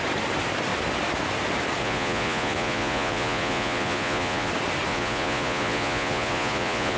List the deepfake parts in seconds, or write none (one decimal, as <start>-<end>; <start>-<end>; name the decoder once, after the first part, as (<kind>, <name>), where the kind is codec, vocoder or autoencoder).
1.8-4.5 (vocoder, Vocos); 4.9-7.0